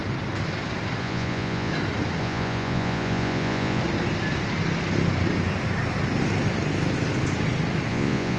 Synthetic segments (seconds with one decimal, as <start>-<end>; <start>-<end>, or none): 1.0-1.7; 2.2-3.8; 7.9-8.4

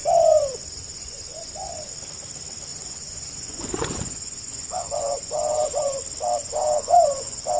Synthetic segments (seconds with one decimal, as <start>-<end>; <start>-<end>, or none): 0.0-1.9; 2.7-6.0; 6.4-7.6

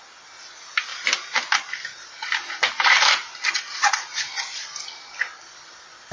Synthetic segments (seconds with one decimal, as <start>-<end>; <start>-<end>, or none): none

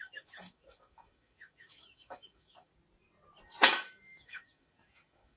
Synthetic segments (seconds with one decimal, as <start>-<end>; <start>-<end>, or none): 0.0-2.7; 3.7-5.4

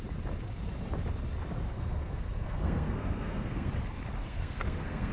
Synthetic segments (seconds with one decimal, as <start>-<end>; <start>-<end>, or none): 1.7-3.7; 4.2-5.1

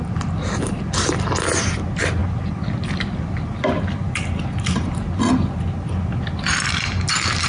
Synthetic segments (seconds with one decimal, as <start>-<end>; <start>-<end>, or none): none